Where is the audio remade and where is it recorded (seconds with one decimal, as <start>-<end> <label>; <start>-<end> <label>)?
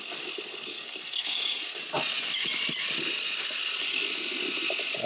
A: 0.0-0.7 recorded; 0.7-1.8 remade; 1.8-5.1 recorded